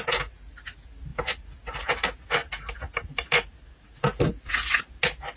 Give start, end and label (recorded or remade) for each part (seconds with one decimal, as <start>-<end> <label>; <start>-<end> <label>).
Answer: 0.0-5.4 recorded